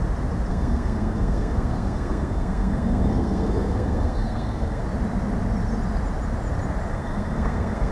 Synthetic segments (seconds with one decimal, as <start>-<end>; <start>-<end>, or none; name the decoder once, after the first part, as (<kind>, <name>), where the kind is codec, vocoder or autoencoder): 0.5-4.8 (codec, SNAC); 6.9-7.9